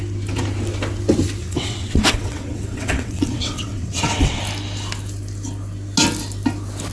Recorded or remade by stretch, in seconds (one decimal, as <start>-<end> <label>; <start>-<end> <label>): 0.0-1.4 recorded; 1.4-4.4 remade; 4.4-6.9 recorded